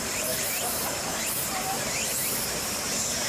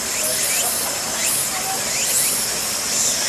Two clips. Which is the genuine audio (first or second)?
second